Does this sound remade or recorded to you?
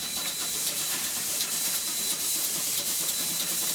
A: remade